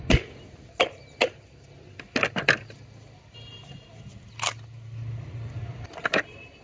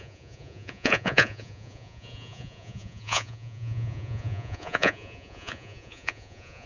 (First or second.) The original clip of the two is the first